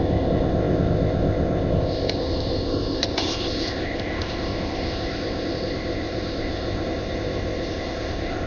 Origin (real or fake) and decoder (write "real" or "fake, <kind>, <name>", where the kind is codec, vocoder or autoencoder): fake, codec, ZipCodec